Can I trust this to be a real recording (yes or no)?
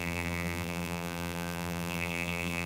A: no